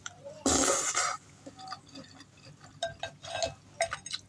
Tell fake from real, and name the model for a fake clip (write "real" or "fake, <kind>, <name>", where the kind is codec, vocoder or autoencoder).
real